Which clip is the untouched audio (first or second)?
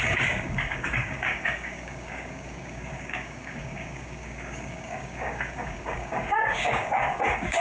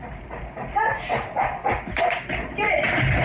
second